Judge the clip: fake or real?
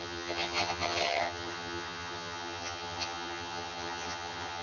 fake